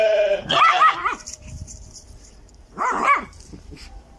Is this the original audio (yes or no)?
no